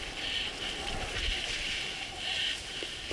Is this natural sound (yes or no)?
yes